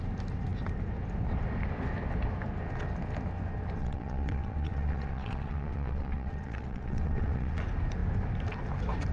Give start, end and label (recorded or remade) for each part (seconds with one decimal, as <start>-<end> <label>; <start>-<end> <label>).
0.0-3.8 recorded; 3.8-7.6 remade; 7.6-9.1 recorded

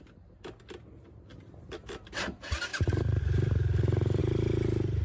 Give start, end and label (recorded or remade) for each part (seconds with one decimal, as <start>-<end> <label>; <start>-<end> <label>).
0.0-1.3 recorded; 1.3-1.9 remade; 1.9-5.0 recorded

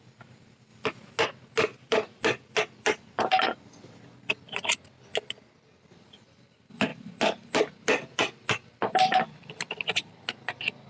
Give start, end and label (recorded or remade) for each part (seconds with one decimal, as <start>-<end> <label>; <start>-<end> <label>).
0.0-1.7 recorded; 1.7-3.0 remade; 3.0-6.9 recorded; 6.9-9.7 remade; 9.7-10.9 recorded

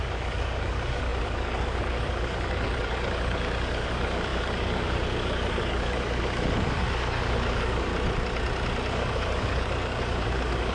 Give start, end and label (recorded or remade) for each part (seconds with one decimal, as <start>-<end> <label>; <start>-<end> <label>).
0.0-7.9 remade; 7.9-8.9 recorded; 8.9-10.7 remade